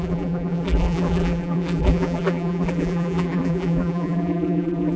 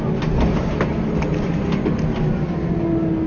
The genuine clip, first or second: second